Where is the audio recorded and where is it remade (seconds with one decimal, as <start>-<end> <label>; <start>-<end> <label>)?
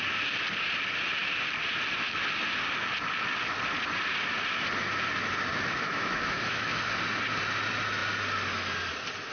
0.0-5.5 recorded; 5.5-6.7 remade; 6.7-9.3 recorded